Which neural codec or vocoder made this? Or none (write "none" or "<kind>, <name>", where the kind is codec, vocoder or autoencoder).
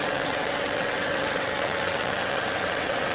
vocoder, WaveNeXt